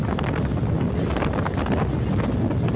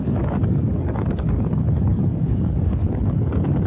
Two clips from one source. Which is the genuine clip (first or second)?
first